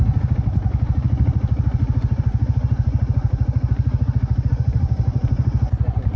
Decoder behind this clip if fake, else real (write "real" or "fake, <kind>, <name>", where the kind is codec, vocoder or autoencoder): fake, vocoder, BigVGAN v2